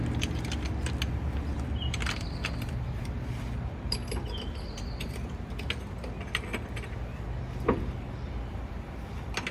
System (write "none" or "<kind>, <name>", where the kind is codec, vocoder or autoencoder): none